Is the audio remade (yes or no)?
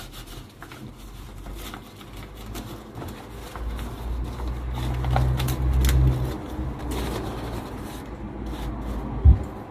no